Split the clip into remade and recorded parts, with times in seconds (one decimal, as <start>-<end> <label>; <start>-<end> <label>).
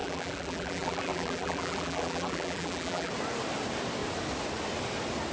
0.0-3.1 remade; 3.1-5.3 recorded